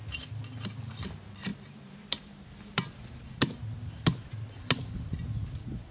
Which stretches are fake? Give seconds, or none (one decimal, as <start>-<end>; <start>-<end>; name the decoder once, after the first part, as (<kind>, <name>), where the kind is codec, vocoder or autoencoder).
1.5-3.0 (vocoder, BigVGAN v2)